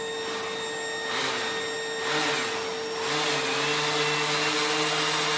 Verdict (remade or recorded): recorded